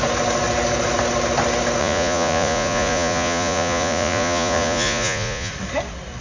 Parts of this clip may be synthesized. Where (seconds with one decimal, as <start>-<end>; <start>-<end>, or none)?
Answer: 1.8-5.5